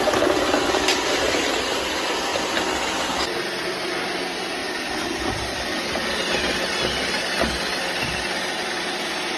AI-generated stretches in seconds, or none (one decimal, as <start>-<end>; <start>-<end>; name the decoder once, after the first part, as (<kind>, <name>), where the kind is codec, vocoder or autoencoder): 2.3-3.9 (vocoder, BigVGAN v2); 4.6-6.1